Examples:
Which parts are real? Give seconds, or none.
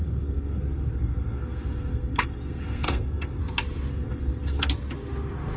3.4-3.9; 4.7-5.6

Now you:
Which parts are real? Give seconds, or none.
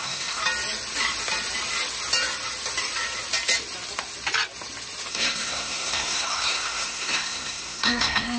0.4-5.1